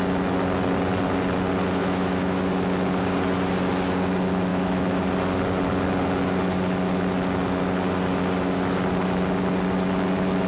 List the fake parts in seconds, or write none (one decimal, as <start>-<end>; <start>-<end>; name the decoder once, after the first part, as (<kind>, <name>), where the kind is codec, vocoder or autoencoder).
1.8-2.4 (autoencoder, DAC-VAE); 4.5-5.1